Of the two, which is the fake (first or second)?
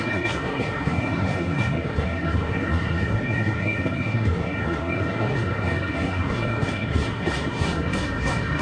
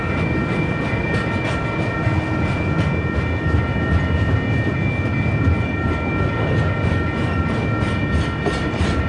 first